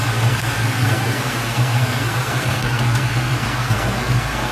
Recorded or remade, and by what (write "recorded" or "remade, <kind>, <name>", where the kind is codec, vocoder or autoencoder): remade, codec, SNAC